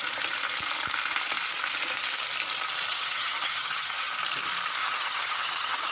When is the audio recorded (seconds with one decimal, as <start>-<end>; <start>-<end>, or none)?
0.0-2.9; 4.1-4.8